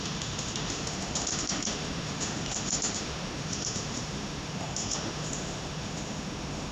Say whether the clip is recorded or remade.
remade